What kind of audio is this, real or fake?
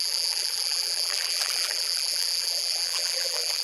fake